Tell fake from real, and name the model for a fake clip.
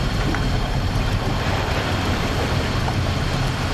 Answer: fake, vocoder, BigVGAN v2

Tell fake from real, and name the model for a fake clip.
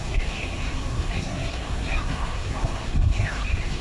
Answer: fake, codec, SNAC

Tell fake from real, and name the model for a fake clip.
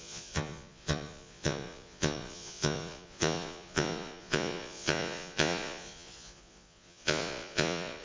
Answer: fake, vocoder, Vocos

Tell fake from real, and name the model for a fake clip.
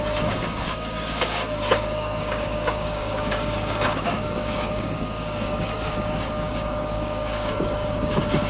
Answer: fake, codec, DAC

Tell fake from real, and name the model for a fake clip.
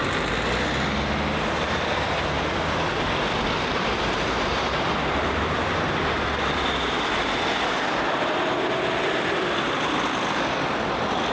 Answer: fake, vocoder, BigVGAN v2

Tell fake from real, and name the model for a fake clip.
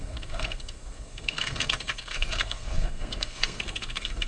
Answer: fake, codec, SNAC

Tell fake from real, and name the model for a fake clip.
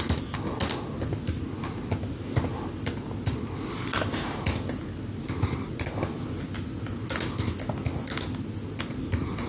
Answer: real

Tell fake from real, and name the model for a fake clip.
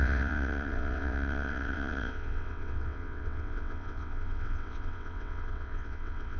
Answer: fake, vocoder, WaveNeXt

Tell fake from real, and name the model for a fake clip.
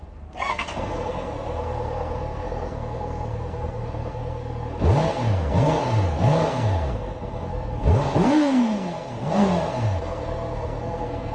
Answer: fake, codec, SNAC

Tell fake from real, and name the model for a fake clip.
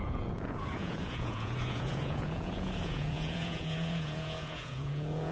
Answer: fake, vocoder, Vocos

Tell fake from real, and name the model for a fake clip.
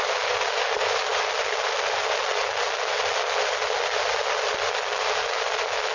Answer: real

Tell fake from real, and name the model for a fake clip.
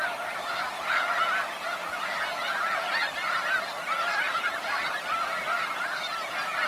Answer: real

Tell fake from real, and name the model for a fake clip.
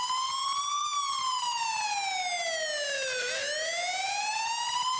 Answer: real